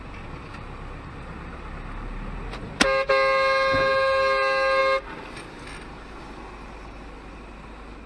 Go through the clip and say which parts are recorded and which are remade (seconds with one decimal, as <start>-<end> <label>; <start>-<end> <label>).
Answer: 0.0-8.1 recorded